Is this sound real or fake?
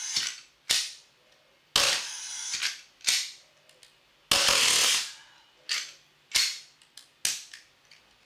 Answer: real